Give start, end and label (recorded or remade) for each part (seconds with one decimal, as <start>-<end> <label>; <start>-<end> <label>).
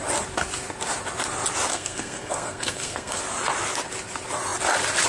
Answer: 0.0-1.7 recorded; 1.7-3.2 remade; 3.2-5.1 recorded